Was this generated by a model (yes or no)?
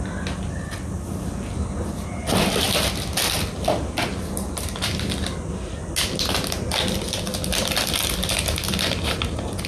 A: no